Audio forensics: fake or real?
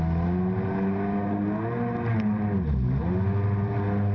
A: real